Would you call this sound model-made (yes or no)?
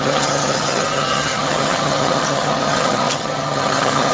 yes